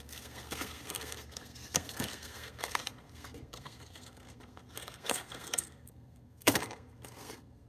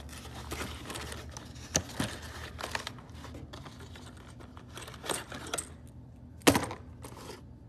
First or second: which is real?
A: second